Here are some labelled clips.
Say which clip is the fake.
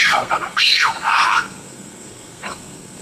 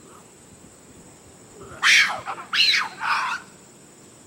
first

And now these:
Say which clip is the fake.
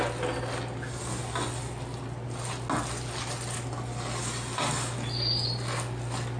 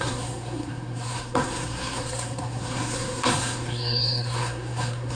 second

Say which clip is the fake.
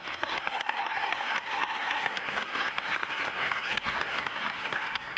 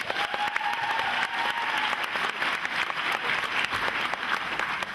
first